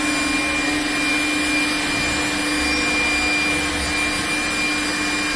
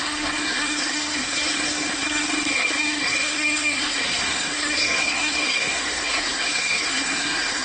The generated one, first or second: second